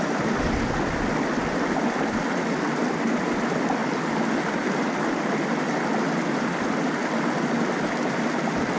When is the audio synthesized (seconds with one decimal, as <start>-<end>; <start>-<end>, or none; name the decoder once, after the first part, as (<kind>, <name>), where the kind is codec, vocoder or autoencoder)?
none